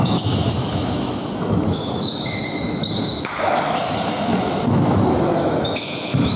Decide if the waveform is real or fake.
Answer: fake